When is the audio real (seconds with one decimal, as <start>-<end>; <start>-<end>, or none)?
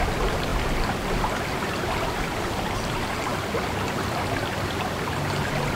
0.0-5.8